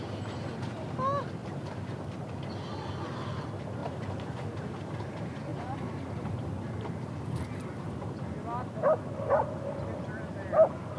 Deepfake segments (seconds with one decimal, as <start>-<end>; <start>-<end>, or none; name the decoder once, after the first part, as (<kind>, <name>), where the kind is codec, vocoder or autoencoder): 1.4-2.3 (vocoder, BigVGAN v2); 3.8-4.3; 5.5-6.3